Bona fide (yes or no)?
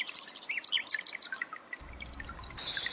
yes